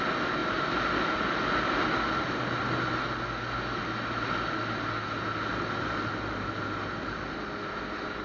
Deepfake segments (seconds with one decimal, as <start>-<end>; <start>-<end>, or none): none